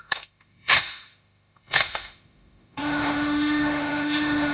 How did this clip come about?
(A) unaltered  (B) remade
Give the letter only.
B